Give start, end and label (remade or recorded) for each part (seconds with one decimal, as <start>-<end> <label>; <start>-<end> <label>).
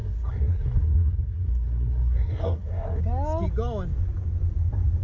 0.0-3.0 remade; 3.0-5.0 recorded